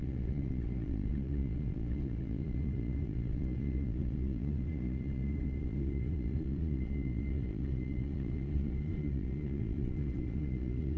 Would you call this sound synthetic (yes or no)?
yes